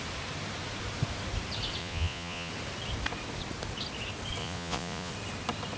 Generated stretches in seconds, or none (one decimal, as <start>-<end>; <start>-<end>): 1.8-2.5; 4.4-5.1